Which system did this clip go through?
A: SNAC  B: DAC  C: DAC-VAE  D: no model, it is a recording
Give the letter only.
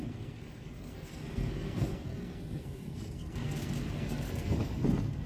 A